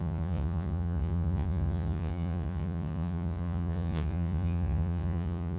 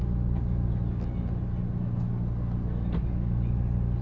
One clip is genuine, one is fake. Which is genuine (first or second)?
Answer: second